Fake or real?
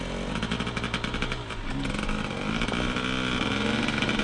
real